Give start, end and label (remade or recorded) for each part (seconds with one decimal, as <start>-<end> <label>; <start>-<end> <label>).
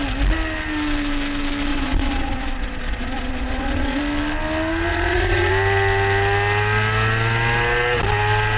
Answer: 0.0-1.7 recorded; 1.7-4.0 remade; 4.0-4.9 recorded; 4.9-5.5 remade; 5.5-8.6 recorded